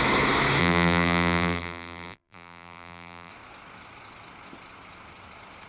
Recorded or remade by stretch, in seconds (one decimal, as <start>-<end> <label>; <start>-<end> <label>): 0.0-0.6 recorded; 0.6-3.3 remade; 3.3-5.7 recorded